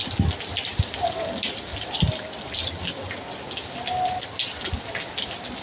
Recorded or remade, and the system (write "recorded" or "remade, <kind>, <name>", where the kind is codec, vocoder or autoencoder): recorded